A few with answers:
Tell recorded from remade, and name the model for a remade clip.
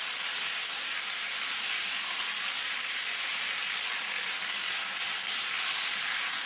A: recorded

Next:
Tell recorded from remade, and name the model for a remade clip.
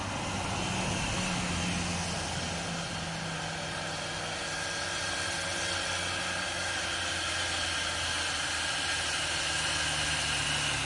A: recorded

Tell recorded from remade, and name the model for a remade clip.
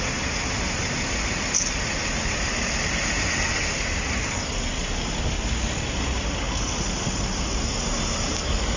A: recorded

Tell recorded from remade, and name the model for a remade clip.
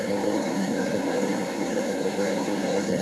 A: remade, codec, SNAC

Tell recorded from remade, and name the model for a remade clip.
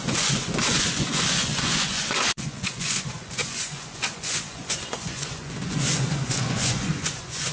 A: remade, vocoder, Vocos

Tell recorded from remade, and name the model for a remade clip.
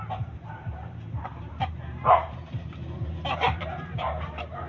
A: remade, vocoder, BigVGAN v2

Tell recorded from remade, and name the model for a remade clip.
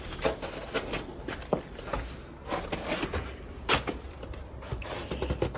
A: recorded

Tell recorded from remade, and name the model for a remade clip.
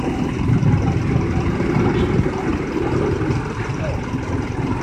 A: recorded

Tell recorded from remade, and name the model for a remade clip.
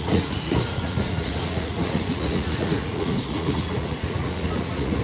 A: remade, vocoder, Vocos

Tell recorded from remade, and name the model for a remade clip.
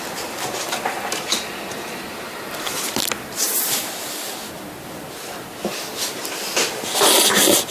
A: recorded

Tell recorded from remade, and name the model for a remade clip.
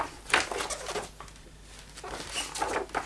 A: recorded